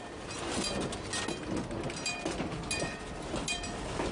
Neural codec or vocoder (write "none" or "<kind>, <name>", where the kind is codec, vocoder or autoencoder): none